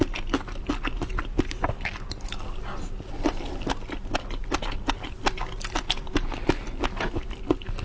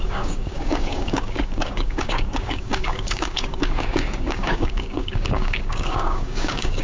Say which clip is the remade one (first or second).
second